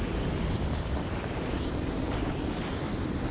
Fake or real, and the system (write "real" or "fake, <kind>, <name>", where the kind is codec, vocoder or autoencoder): fake, vocoder, BigVGAN v2